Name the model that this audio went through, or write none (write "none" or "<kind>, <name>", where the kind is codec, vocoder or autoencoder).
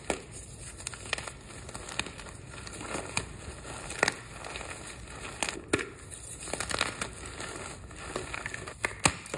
none